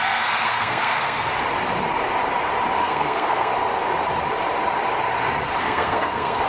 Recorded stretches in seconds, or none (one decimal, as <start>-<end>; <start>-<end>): 1.3-2.8; 3.5-5.6